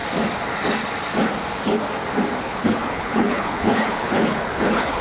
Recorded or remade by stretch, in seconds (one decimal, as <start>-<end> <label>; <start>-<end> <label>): 0.0-2.4 recorded; 2.4-5.0 remade